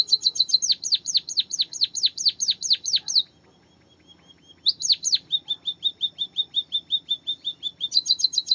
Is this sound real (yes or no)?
yes